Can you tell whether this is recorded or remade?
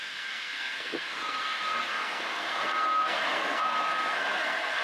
remade